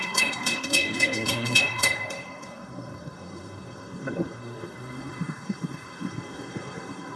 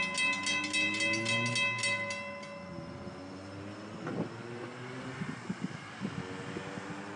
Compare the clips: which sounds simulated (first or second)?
first